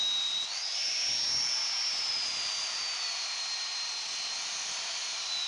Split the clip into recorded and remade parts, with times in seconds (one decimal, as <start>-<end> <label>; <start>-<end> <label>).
0.0-5.5 recorded